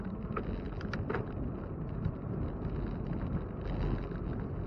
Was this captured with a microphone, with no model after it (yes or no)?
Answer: yes